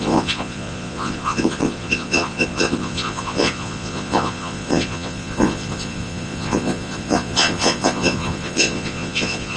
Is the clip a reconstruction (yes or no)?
yes